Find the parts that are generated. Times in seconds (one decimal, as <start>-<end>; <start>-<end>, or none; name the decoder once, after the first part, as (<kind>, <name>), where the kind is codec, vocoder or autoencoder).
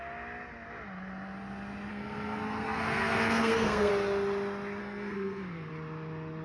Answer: 1.9-3.9 (codec, SNAC); 4.8-5.7